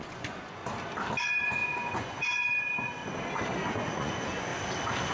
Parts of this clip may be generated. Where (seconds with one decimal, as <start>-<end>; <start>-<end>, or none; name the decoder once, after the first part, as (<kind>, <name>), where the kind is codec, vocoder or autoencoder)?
0.0-0.6 (vocoder, Vocos); 1.2-3.0; 3.7-4.5